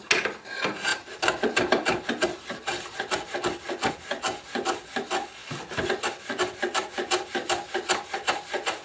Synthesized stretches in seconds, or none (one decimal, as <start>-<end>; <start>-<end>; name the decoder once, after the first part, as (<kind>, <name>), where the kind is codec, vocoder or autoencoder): 0.9-3.9 (vocoder, BigVGAN v2)